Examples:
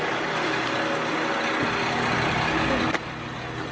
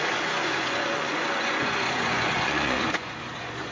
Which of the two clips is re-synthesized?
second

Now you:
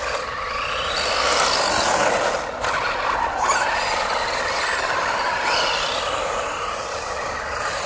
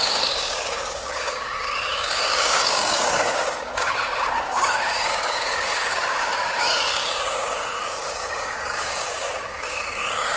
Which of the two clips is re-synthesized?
second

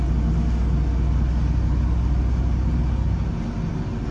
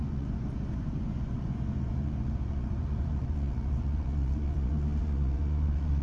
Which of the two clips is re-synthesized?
second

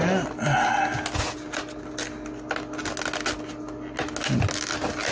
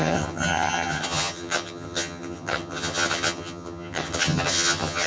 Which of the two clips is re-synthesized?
second